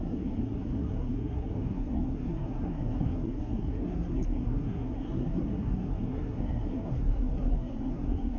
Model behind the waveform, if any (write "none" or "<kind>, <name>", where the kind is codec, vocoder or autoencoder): codec, SNAC